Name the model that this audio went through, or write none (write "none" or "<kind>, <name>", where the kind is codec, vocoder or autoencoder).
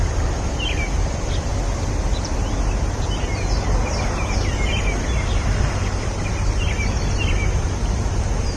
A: none